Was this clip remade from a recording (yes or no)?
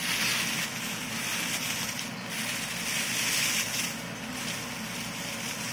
no